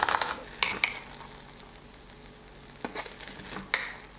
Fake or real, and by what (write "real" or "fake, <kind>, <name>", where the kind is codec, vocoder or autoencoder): real